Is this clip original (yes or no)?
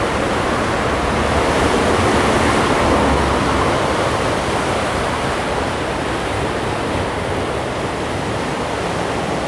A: yes